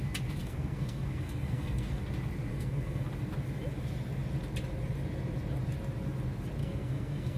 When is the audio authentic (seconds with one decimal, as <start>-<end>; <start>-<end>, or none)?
0.0-0.4; 2.0-2.5; 3.1-6.6